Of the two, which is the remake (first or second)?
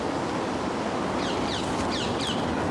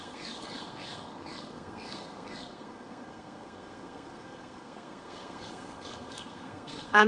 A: second